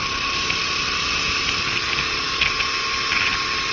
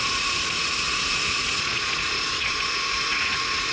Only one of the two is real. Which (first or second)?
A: first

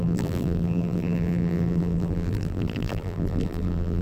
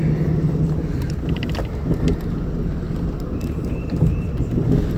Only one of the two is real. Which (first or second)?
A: second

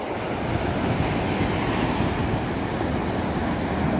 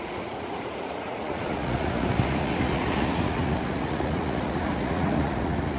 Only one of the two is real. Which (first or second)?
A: first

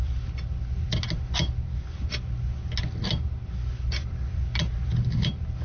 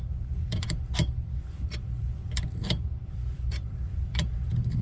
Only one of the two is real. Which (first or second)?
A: first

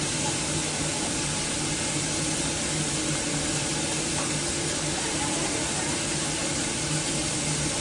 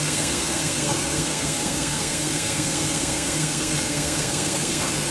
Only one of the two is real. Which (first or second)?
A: first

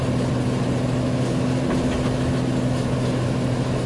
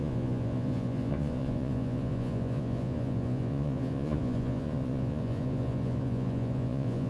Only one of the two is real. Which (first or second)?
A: first